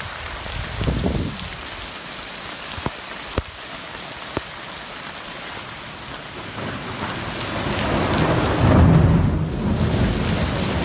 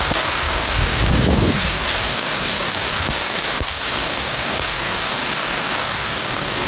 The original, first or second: first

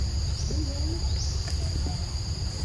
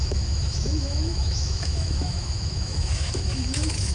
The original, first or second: first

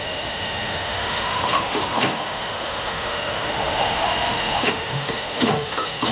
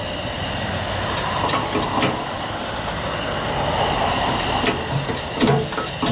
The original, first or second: second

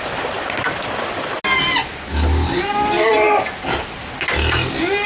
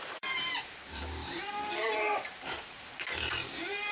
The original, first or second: first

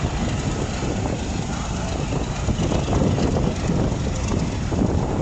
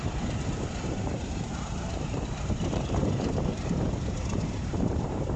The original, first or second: first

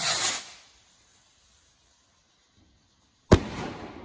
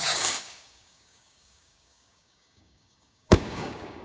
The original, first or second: first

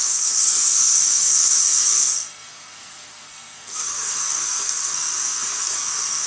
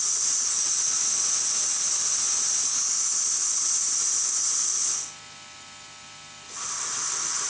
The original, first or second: second